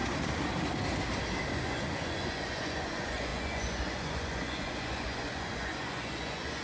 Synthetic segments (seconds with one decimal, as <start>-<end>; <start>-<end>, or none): 1.5-6.6